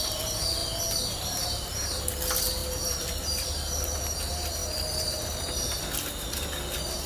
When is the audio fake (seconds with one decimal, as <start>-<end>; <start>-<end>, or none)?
0.6-2.0; 2.6-4.0